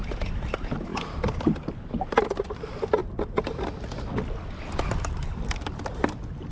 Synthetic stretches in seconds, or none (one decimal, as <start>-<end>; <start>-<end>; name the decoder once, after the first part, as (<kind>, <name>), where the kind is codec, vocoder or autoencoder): none

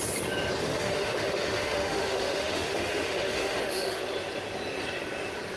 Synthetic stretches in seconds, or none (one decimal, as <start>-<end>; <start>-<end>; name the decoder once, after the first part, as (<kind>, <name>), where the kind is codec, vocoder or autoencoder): 0.6-4.0 (autoencoder, DAC-VAE)

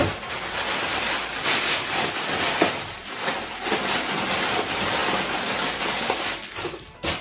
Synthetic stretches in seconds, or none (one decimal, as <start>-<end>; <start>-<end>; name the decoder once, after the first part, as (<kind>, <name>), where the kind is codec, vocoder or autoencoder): none

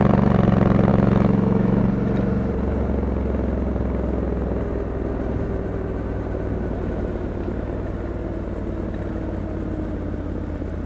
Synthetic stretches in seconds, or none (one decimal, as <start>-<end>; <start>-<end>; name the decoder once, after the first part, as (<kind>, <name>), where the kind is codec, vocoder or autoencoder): 0.9-1.8 (autoencoder, DAC-VAE)

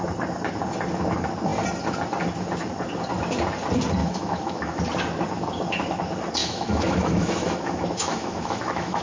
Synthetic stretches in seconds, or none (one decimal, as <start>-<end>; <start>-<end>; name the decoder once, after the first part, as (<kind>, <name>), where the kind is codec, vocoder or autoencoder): 4.0-4.8 (autoencoder, DAC-VAE); 6.4-9.0